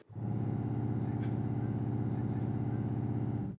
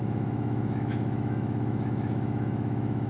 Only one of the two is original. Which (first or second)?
first